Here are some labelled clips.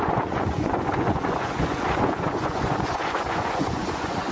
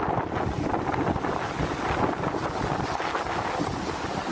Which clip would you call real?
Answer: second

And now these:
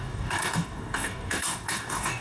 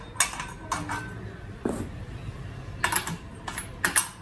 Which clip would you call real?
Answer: second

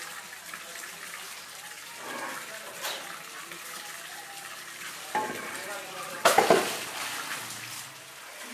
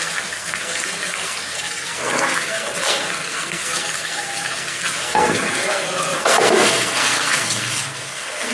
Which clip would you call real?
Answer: first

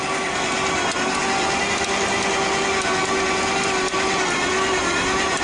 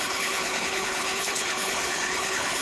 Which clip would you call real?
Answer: first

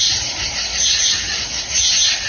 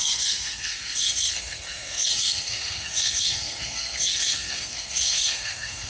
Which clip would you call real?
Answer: first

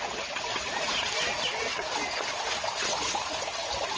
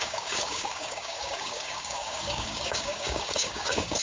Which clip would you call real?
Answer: first